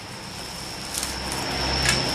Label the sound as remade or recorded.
recorded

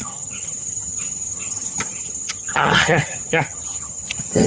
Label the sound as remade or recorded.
remade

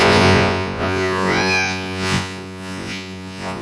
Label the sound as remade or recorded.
remade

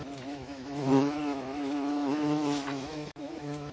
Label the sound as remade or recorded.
remade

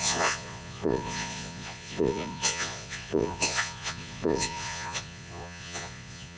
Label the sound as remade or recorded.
remade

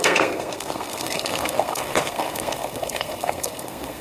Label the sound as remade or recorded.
remade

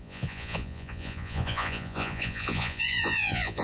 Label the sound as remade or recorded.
remade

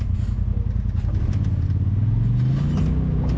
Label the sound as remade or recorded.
recorded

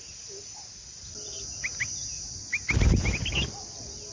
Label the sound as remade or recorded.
recorded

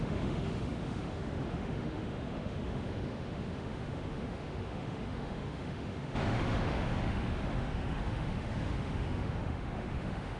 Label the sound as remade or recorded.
remade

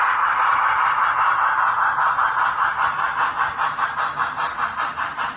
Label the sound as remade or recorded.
recorded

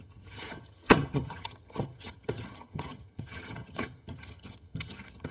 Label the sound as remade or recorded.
remade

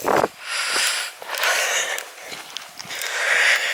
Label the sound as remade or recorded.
recorded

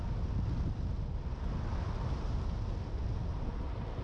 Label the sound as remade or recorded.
recorded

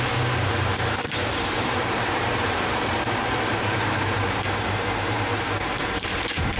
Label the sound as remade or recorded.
remade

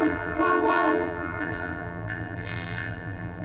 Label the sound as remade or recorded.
remade